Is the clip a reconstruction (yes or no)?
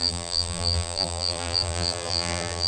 yes